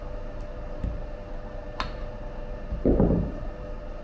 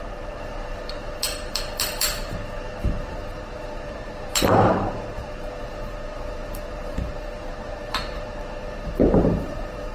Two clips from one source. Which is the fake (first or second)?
second